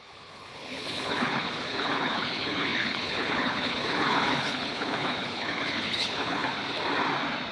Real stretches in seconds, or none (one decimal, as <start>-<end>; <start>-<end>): 6.5-7.5

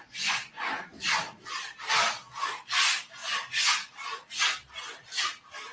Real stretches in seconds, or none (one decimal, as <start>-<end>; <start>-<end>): 0.7-5.7